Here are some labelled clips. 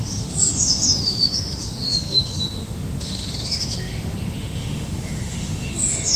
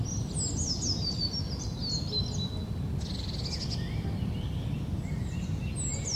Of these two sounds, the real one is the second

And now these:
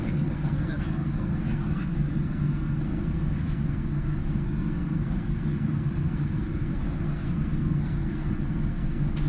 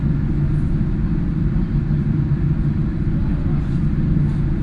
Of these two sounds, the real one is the second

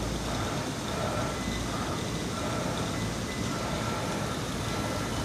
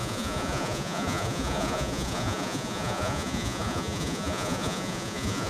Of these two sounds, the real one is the first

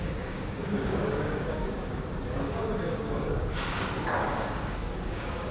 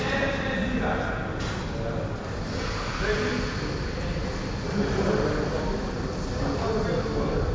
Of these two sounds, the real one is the second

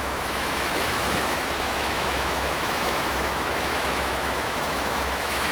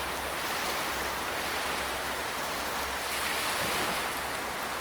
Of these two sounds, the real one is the second